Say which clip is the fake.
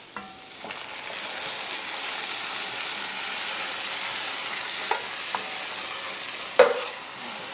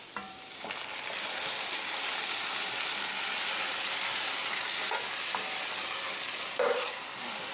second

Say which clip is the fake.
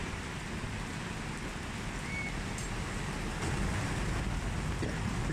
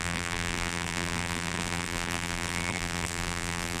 second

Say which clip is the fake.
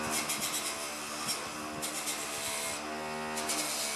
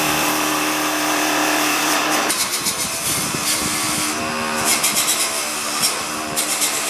second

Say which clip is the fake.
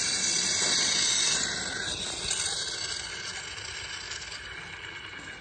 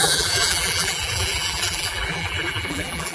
second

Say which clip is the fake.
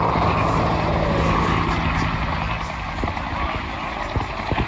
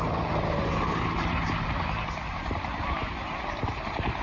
second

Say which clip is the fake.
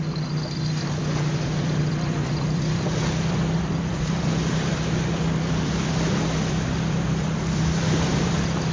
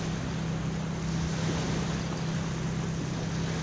first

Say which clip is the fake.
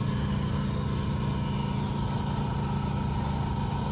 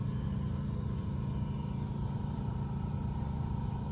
second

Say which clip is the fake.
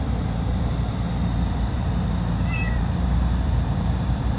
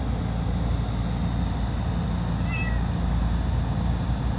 first